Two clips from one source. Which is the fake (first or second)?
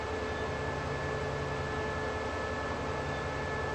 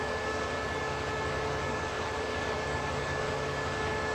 second